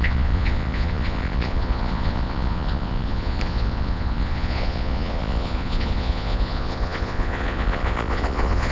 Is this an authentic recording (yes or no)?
no